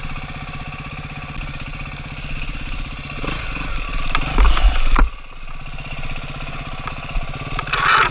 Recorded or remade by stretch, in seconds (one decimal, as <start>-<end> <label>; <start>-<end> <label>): 0.0-8.1 recorded